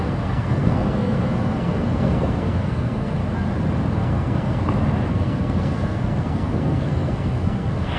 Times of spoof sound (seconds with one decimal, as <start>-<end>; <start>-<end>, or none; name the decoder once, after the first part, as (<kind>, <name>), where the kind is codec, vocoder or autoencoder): 0.0-3.2 (codec, SNAC); 3.9-4.6; 5.1-8.0